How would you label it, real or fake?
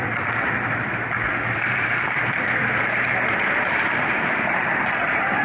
fake